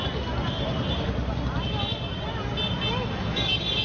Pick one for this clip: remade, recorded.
recorded